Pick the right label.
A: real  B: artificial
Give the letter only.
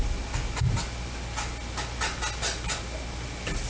A